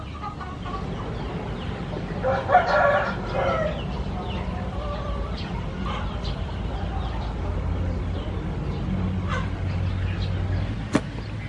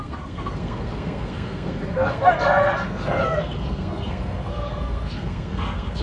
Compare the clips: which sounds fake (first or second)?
second